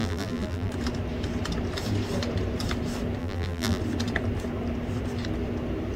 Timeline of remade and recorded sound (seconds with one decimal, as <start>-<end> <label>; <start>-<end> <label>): 0.0-0.7 remade; 0.7-3.2 recorded; 3.2-3.8 remade; 3.8-6.0 recorded